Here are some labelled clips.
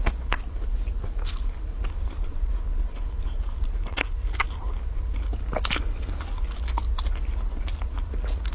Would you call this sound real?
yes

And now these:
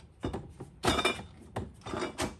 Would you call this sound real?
yes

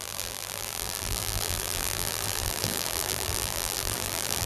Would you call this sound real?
no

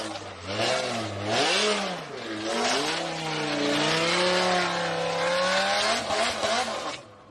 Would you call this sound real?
yes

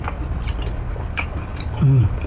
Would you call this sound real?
no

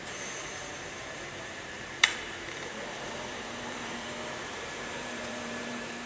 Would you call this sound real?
no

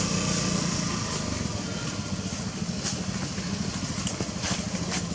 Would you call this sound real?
yes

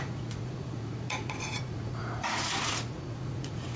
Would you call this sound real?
no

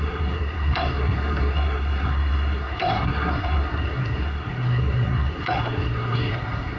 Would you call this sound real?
no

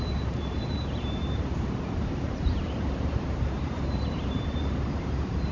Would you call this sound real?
no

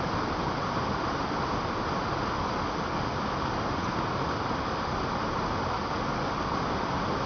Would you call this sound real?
yes